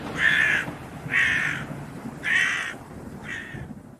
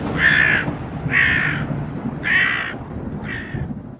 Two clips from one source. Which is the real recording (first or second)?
second